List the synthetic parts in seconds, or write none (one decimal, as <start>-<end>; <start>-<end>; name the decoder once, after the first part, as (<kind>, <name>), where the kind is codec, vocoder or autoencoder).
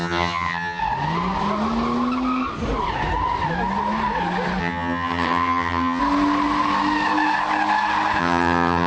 0.0-0.8 (vocoder, HiFi-GAN); 4.6-6.0; 8.2-8.9